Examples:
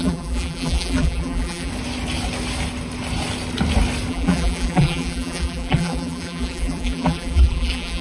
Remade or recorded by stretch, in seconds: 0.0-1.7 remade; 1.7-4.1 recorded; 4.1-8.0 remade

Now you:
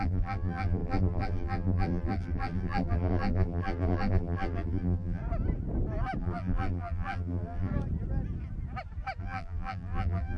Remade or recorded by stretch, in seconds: 0.0-5.2 remade; 5.2-6.2 recorded; 6.2-7.7 remade; 7.7-9.2 recorded; 9.2-10.4 remade

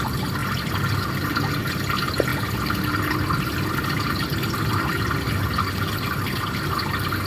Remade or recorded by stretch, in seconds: 0.0-2.3 remade; 2.3-3.3 recorded; 3.3-7.3 remade

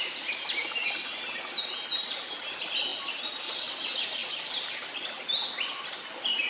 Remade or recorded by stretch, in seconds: 0.0-2.9 recorded; 2.9-3.6 remade; 3.6-4.2 recorded; 4.2-5.8 remade; 5.8-6.5 recorded

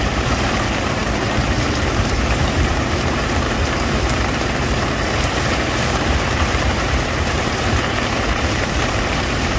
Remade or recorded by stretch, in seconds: 0.0-9.6 remade